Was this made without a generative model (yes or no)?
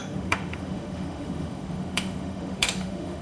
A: no